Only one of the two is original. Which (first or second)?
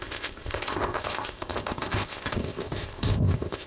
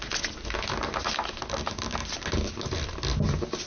second